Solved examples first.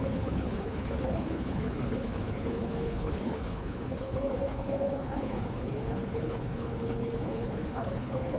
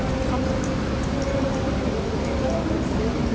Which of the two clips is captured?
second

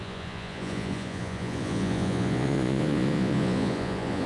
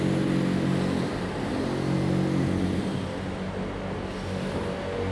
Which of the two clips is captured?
second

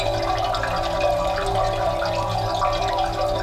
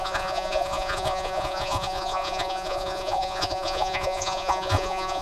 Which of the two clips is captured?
first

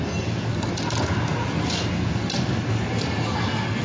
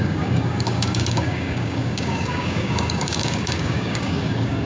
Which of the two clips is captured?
first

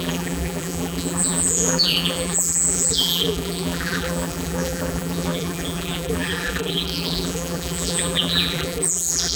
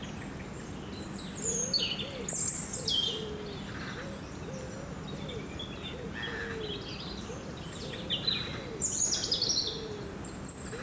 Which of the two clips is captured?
second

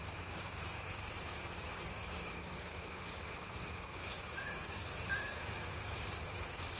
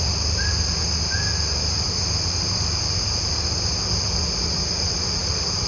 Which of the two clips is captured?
second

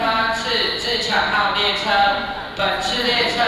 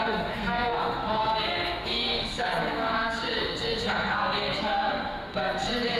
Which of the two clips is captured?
first